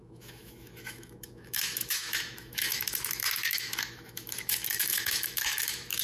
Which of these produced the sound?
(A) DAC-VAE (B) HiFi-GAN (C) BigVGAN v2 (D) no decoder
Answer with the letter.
A